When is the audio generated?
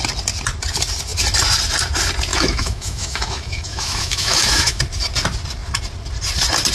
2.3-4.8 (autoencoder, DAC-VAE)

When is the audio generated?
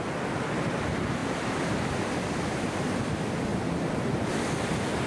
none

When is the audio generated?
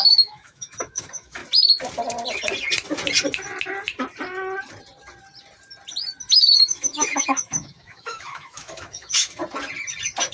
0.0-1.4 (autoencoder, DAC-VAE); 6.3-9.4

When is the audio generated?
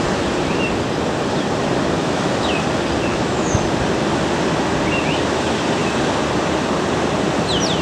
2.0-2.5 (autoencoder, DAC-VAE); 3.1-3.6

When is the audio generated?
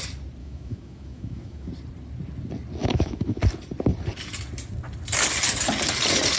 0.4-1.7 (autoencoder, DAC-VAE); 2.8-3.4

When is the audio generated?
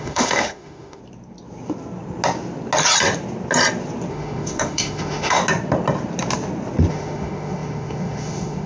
0.0-1.0 (autoencoder, DAC-VAE); 4.1-5.4; 6.9-8.7